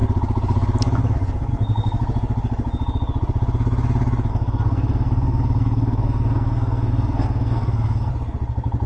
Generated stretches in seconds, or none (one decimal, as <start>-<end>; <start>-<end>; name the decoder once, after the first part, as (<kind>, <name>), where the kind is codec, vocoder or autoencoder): 4.3-8.1 (codec, SNAC)